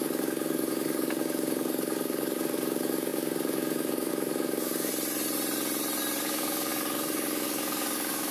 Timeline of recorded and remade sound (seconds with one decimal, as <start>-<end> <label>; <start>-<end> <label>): 0.0-4.9 remade; 4.9-6.2 recorded; 6.2-8.3 remade